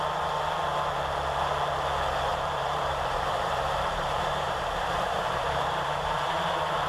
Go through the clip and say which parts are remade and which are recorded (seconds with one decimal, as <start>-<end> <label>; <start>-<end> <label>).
0.0-2.3 recorded; 2.3-6.3 remade; 6.3-6.9 recorded